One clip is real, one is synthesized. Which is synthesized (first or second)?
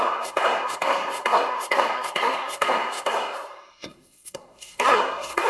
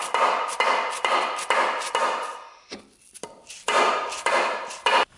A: first